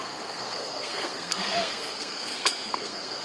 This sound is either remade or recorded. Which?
remade